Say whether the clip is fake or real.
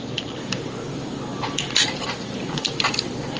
real